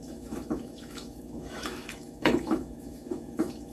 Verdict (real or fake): fake